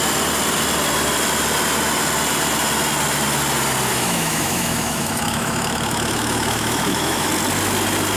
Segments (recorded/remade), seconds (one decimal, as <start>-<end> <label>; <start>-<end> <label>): 0.0-3.9 recorded; 3.9-7.3 remade; 7.3-8.2 recorded